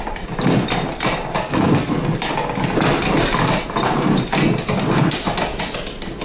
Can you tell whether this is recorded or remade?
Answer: recorded